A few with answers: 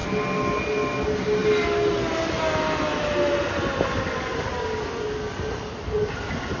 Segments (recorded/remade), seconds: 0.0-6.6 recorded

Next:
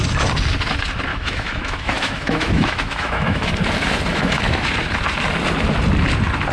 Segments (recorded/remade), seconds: 0.0-1.1 recorded; 1.1-3.5 remade; 3.5-4.1 recorded; 4.1-4.7 remade; 4.7-6.5 recorded

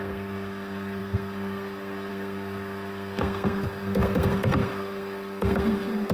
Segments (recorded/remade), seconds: 0.0-6.1 remade